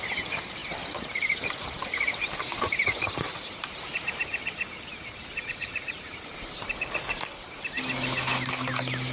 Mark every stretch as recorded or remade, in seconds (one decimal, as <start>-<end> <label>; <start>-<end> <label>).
0.0-0.6 recorded; 0.6-2.1 remade; 2.1-2.5 recorded; 2.5-6.7 remade; 6.7-9.1 recorded

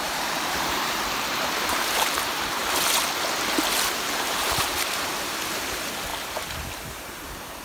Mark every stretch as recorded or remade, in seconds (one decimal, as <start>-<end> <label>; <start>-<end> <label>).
0.0-2.6 remade; 2.6-4.0 recorded; 4.0-6.1 remade; 6.1-6.8 recorded; 6.8-7.6 remade

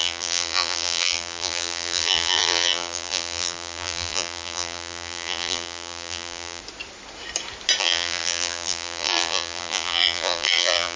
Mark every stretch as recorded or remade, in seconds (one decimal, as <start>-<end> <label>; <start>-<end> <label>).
0.0-6.6 remade; 6.6-7.8 recorded; 7.8-11.0 remade

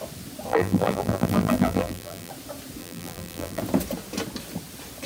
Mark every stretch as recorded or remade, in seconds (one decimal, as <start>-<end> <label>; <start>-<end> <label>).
0.0-0.5 recorded; 0.5-2.3 remade; 2.3-2.8 recorded; 2.8-3.6 remade; 3.6-5.1 recorded

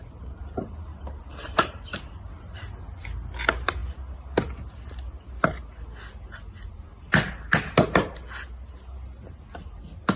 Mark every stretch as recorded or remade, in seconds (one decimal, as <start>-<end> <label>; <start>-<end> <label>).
0.0-0.9 recorded; 0.9-2.8 remade; 2.8-10.2 recorded